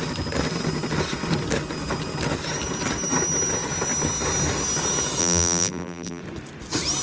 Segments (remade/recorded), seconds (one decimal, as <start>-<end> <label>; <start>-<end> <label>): 0.0-5.2 recorded; 5.2-6.2 remade; 6.2-7.0 recorded